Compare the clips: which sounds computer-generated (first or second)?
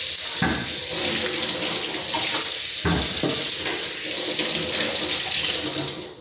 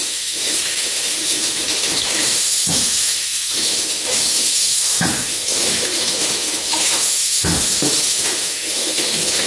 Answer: second